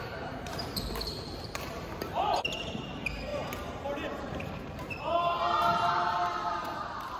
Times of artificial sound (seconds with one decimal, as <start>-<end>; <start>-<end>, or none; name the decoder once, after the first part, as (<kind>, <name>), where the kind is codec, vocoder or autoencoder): 0.0-7.2 (vocoder, BigVGAN v2)